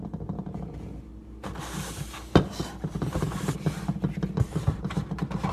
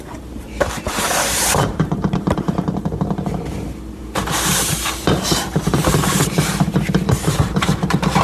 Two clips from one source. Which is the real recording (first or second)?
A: first